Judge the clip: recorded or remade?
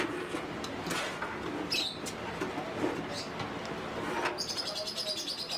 recorded